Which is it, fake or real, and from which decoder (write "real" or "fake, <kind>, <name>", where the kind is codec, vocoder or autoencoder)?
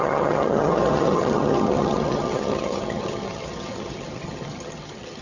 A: fake, vocoder, HiFi-GAN